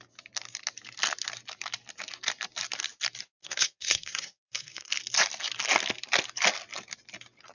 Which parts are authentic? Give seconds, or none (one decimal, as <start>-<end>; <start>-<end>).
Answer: 0.0-3.4; 4.9-7.5